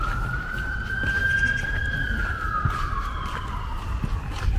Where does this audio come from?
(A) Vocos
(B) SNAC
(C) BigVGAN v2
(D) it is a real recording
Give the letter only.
D